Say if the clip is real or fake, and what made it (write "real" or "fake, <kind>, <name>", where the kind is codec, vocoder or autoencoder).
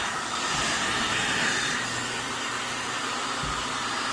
real